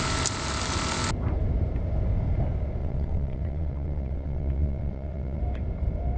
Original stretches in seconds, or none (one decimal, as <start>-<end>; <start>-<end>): 0.0-2.8; 5.4-6.2